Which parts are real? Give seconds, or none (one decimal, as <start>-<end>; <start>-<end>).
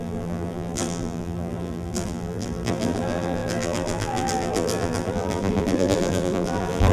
none